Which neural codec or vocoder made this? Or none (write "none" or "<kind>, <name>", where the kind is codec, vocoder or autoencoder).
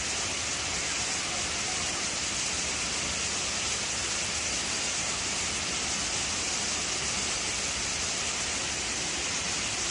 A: none